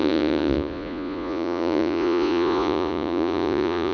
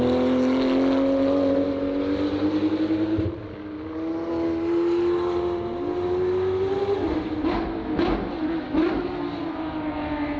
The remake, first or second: first